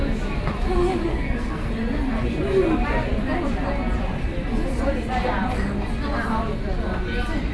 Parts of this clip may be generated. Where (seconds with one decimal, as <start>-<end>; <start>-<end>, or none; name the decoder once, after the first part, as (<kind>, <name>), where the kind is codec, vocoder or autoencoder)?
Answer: 1.1-1.7 (codec, SNAC)